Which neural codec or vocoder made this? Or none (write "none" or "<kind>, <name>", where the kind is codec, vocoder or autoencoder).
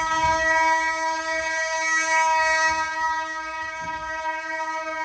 codec, DAC